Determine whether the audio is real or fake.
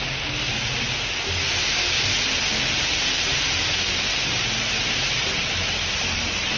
real